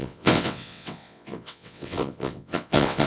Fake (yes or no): yes